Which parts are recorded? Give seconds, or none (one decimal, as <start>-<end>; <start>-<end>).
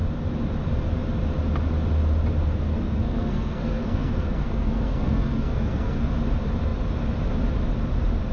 0.0-2.7; 6.1-8.3